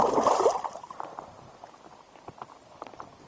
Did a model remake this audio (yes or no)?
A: no